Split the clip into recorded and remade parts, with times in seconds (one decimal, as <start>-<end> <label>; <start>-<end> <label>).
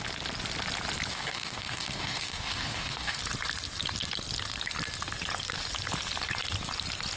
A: 0.0-1.1 recorded; 1.1-3.2 remade; 3.2-7.2 recorded